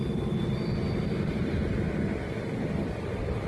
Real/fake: real